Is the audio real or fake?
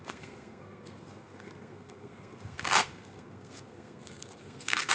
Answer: fake